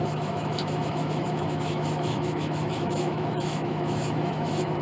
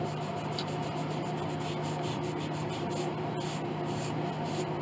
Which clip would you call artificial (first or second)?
first